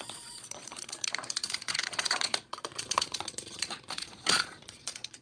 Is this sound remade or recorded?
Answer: remade